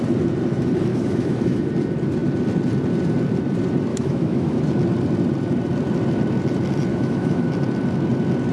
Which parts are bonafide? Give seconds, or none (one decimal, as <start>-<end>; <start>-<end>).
0.0-0.9; 1.7-3.9; 4.6-6.9; 7.5-8.5